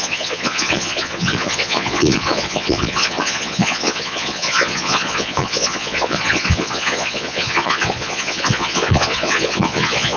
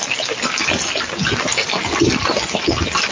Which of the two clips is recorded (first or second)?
second